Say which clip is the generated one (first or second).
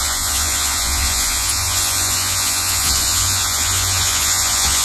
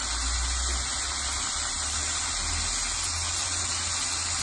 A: first